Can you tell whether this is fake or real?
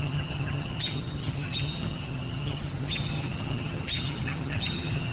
fake